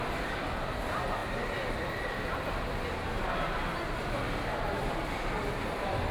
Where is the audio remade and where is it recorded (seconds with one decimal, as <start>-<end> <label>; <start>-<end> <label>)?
0.0-6.1 remade